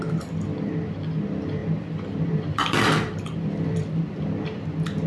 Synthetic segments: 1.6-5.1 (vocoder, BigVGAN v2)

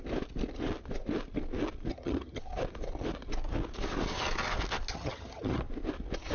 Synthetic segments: 1.9-2.4 (vocoder, HiFi-GAN); 4.9-5.6

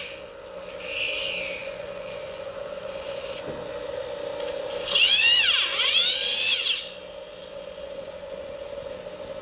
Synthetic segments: 1.6-3.1 (vocoder, Vocos); 7.4-9.0